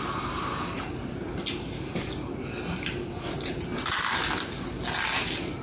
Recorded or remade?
recorded